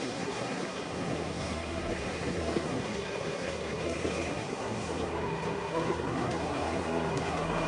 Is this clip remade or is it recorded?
remade